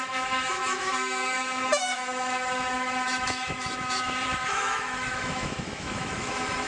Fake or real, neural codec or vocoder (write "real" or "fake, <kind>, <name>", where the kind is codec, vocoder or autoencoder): fake, autoencoder, DAC-VAE